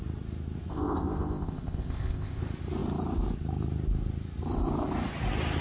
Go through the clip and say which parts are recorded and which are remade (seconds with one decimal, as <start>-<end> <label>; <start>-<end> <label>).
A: 0.0-0.7 recorded; 0.7-2.4 remade; 2.4-5.6 recorded